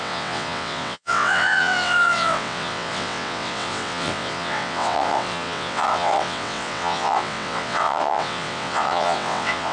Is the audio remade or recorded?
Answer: remade